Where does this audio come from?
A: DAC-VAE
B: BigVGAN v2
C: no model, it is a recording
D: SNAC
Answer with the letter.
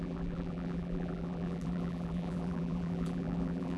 B